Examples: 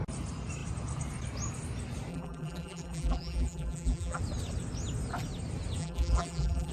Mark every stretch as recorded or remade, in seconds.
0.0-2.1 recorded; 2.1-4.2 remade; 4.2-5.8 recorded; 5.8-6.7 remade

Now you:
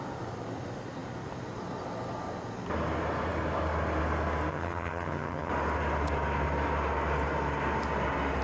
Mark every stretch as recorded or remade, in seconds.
0.0-4.5 recorded; 4.5-5.5 remade; 5.5-8.4 recorded